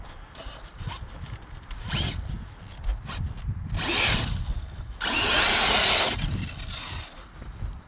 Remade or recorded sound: recorded